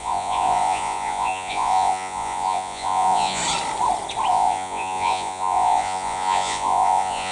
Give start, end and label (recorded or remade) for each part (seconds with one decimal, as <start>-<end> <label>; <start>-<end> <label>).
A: 0.0-3.4 remade; 3.4-4.3 recorded; 4.3-7.3 remade